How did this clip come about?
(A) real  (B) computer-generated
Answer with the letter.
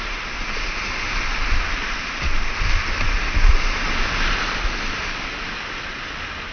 A